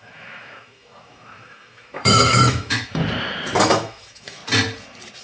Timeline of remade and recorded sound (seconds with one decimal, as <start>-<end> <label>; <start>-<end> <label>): 0.0-3.0 remade; 3.0-3.6 recorded; 3.6-4.4 remade; 4.4-5.2 recorded